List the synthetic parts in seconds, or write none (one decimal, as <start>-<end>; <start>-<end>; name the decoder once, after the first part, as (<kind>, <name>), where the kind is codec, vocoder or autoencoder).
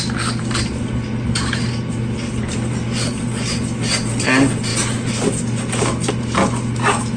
none